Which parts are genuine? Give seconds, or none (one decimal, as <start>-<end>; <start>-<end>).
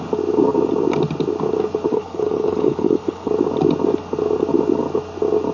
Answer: 0.0-1.9; 3.3-5.5